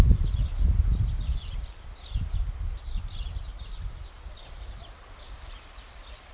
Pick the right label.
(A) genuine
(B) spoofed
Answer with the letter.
A